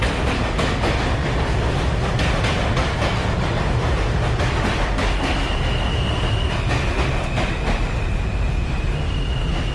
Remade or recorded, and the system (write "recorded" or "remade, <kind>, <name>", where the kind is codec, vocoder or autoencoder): recorded